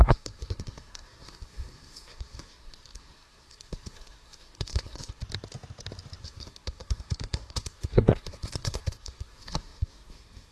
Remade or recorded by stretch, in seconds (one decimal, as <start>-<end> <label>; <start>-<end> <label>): 0.0-5.2 remade; 5.2-6.2 recorded; 6.2-10.5 remade